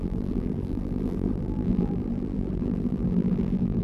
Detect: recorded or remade remade